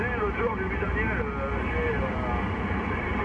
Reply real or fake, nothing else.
real